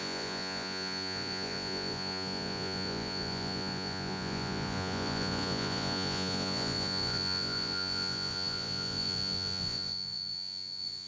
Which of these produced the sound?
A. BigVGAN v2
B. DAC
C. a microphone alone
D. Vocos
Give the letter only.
D